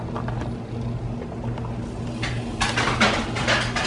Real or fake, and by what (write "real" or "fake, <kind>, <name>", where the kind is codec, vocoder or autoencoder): real